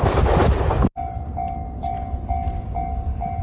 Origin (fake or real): real